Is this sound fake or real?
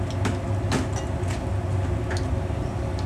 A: real